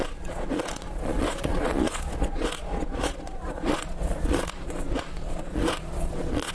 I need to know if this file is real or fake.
fake